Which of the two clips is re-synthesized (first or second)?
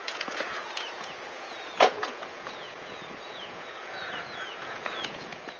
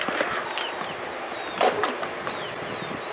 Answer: first